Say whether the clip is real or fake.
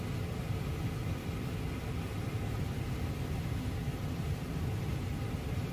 real